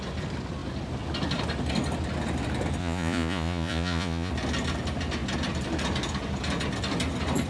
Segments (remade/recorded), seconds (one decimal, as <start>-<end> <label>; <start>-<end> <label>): 0.0-2.8 recorded; 2.8-4.3 remade; 4.3-7.5 recorded